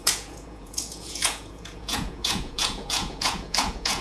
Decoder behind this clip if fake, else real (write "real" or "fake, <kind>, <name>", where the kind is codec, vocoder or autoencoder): fake, vocoder, Vocos